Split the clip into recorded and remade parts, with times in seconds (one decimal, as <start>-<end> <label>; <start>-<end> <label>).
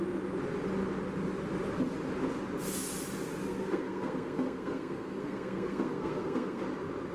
0.0-3.4 recorded; 3.4-6.6 remade; 6.6-7.1 recorded